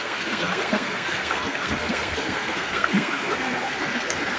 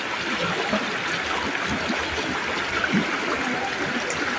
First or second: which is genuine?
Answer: second